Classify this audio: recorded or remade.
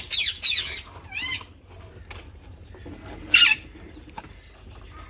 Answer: recorded